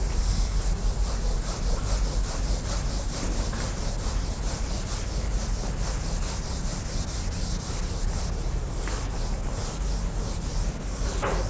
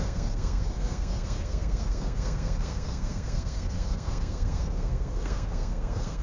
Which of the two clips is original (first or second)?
first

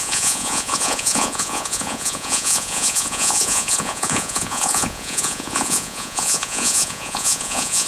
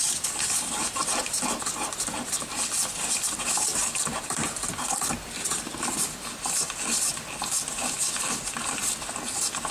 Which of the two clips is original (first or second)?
second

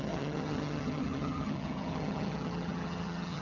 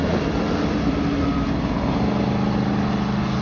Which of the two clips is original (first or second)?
second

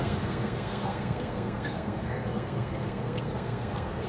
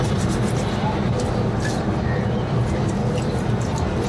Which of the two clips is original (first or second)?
second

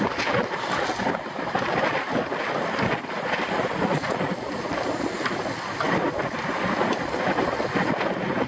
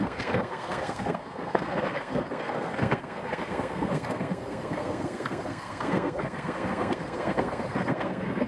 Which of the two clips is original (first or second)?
first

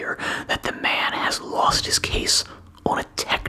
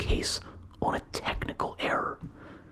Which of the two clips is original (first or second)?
first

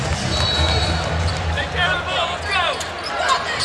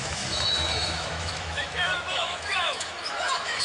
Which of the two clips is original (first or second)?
first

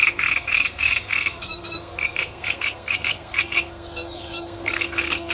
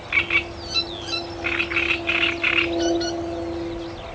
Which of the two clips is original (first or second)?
second